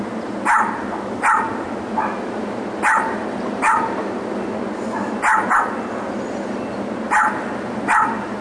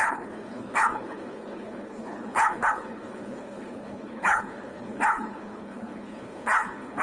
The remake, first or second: second